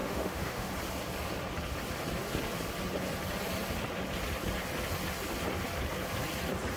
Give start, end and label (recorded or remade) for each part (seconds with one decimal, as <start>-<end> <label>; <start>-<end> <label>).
0.0-0.7 remade; 0.7-6.8 recorded